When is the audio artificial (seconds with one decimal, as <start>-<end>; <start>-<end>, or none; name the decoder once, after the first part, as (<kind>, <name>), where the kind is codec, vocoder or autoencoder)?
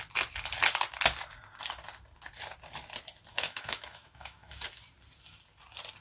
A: 3.3-4.5 (autoencoder, DAC-VAE)